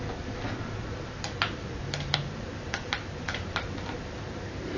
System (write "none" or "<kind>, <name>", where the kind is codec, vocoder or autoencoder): vocoder, BigVGAN v2